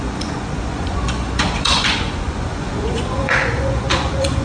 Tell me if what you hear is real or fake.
fake